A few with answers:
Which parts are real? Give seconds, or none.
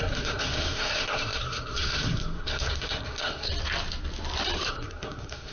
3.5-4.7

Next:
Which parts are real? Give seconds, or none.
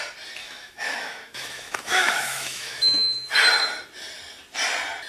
0.0-0.4; 3.3-5.1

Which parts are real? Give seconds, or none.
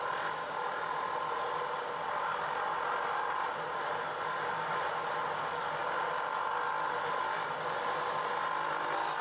0.0-9.2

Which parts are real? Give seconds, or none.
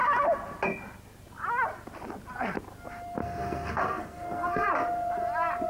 0.0-3.2; 4.7-5.7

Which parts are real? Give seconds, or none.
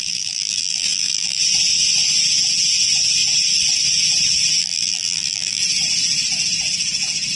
1.4-4.6; 5.6-7.4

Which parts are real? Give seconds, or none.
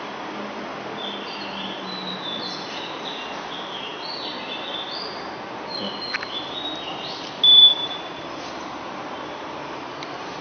0.0-10.4